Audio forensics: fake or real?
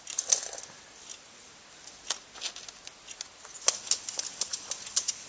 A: real